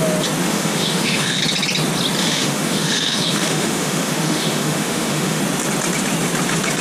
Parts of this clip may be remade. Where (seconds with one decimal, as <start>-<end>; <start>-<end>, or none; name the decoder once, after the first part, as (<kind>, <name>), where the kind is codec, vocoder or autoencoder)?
0.4-1.4 (autoencoder, DAC-VAE); 2.2-5.4